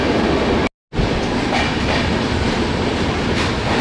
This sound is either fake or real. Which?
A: real